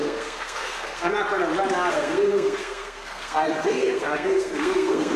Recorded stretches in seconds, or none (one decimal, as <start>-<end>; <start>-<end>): 1.1-1.9